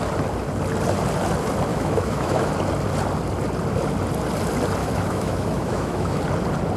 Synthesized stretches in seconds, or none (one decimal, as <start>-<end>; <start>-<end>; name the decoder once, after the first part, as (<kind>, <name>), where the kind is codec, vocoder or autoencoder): 1.7-2.5 (autoencoder, DAC-VAE); 4.8-6.2